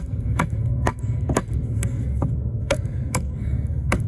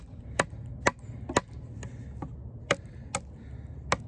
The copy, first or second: first